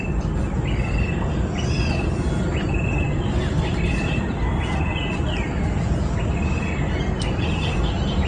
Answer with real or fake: real